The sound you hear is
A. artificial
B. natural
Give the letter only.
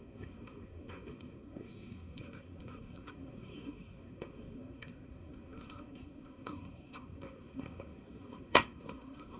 A